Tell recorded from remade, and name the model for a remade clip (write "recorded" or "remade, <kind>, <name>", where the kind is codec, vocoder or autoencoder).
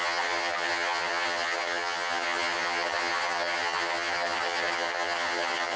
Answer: remade, vocoder, HiFi-GAN